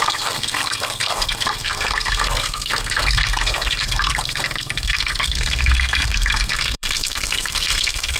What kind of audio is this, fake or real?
fake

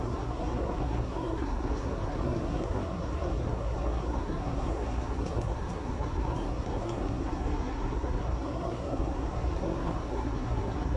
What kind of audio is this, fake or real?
fake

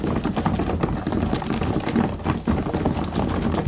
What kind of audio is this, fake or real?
real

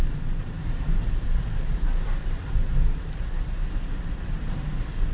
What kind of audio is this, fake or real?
real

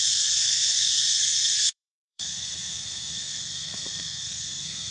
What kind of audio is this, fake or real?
fake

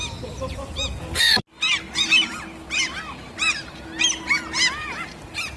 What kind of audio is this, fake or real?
real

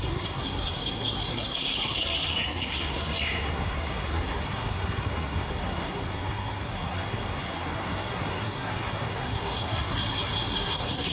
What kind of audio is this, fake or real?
fake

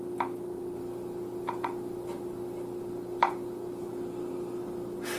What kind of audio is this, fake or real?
real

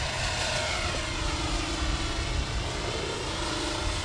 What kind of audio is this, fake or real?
real